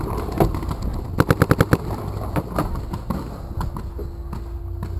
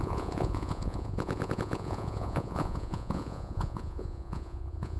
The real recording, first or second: first